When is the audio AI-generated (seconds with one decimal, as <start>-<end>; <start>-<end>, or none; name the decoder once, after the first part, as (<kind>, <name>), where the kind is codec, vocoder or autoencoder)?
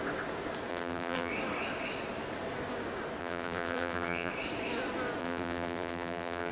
0.7-1.3 (vocoder, BigVGAN v2); 3.2-4.3; 5.2-6.5